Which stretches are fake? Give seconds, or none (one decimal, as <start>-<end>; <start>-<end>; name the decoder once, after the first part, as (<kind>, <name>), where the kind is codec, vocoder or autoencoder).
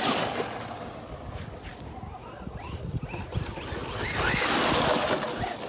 none